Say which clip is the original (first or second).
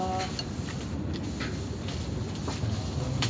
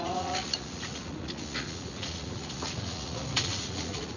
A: first